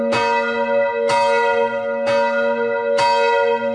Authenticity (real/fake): real